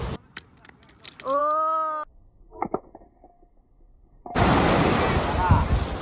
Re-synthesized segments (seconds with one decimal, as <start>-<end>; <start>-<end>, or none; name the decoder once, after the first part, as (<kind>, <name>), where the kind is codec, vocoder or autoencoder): none

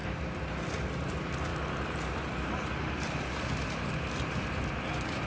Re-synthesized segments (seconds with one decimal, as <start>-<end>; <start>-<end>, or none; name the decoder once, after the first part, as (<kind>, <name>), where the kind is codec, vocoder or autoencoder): none

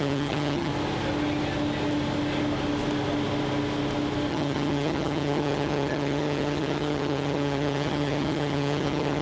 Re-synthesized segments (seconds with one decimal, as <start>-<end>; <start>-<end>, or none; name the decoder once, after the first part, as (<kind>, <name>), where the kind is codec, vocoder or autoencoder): 0.0-0.7 (vocoder, HiFi-GAN); 4.3-9.2